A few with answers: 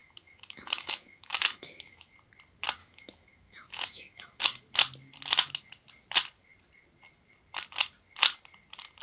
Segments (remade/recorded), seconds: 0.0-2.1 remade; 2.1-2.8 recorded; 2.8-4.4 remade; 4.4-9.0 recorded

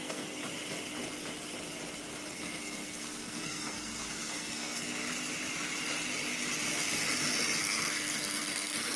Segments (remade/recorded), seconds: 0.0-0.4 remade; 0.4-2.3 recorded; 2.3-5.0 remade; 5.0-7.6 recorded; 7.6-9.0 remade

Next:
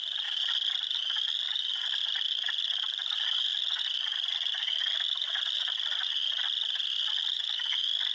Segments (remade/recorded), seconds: 0.0-8.1 recorded

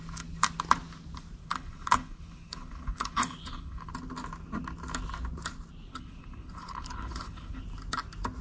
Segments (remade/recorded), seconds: 0.0-1.4 recorded; 1.4-3.9 remade; 3.9-5.9 recorded; 5.9-7.6 remade; 7.6-8.4 recorded

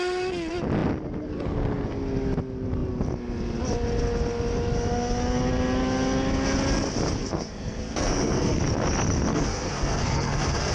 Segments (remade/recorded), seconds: 0.0-7.2 recorded; 7.2-8.6 remade; 8.6-9.3 recorded; 9.3-10.7 remade